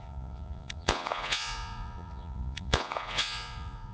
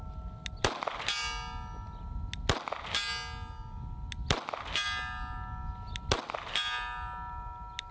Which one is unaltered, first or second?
second